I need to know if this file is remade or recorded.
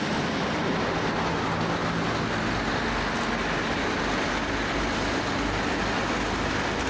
recorded